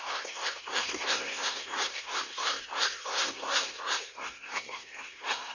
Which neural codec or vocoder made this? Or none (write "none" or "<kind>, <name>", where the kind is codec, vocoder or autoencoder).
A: codec, SNAC